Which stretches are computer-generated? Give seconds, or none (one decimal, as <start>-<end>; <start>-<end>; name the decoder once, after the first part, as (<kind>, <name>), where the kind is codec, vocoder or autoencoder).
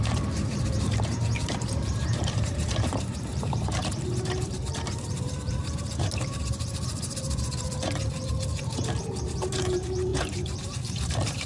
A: 0.0-11.5 (vocoder, BigVGAN v2)